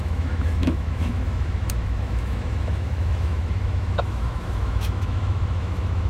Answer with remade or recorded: remade